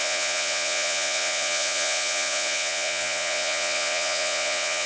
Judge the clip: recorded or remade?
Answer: remade